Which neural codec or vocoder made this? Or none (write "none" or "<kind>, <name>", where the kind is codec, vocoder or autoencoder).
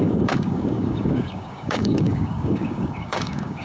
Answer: codec, DAC